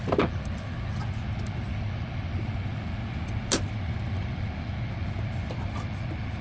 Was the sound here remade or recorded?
recorded